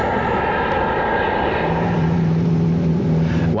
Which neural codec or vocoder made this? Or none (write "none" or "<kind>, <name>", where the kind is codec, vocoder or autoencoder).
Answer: vocoder, BigVGAN v2